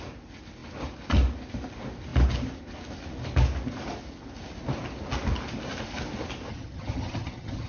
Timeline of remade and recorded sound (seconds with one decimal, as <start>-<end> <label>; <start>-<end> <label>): 0.0-6.5 recorded; 6.5-7.7 remade